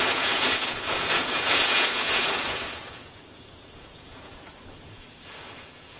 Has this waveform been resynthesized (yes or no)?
yes